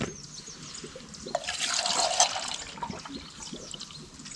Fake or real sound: real